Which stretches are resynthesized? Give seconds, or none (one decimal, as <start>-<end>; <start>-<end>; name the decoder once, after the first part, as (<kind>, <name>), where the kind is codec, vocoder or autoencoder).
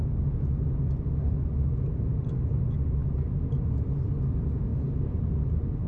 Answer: none